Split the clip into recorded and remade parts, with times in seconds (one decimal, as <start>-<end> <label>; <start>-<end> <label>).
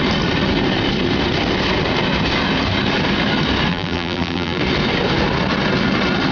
0.0-3.7 recorded; 3.7-4.6 remade; 4.6-6.3 recorded